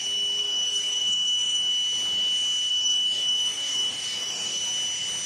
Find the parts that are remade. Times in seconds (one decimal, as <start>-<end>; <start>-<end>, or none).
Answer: 0.4-1.7; 2.7-4.6